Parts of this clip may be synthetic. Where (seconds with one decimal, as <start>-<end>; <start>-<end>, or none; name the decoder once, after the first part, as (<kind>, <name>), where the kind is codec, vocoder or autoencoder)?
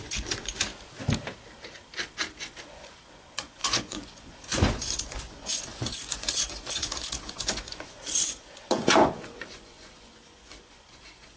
0.0-0.7 (vocoder, Vocos); 2.4-11.4